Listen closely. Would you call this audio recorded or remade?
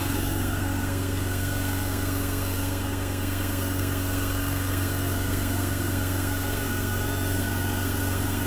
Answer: remade